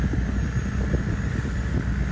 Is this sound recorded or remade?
recorded